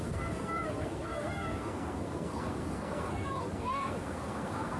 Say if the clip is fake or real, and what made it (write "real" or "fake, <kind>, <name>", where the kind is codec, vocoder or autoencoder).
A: fake, codec, SNAC